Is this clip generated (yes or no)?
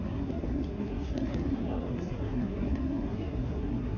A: yes